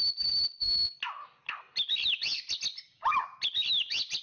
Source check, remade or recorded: recorded